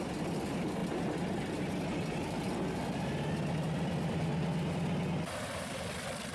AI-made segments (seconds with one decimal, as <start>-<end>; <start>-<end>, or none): none